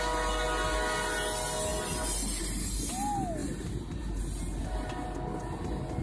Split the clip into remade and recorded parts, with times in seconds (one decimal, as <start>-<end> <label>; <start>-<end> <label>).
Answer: 0.0-6.0 recorded